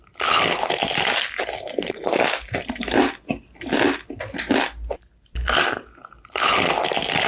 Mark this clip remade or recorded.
recorded